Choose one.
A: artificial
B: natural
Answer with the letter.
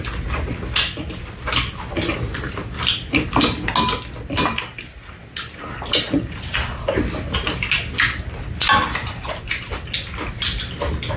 B